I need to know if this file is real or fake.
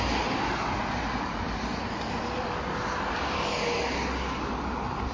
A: real